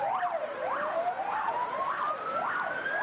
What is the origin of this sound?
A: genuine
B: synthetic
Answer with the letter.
A